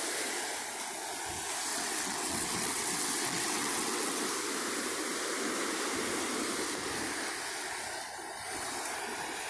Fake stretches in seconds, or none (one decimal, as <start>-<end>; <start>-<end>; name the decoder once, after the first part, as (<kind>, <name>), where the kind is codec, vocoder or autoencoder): 1.7-4.2 (vocoder, WaveNeXt)